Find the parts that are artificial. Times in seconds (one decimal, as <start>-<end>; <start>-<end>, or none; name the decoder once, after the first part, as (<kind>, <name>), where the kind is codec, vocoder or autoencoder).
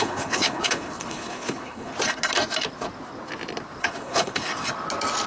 0.0-1.9 (codec, HILCodec); 3.8-4.5